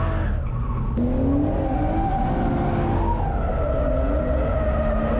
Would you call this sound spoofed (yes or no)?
no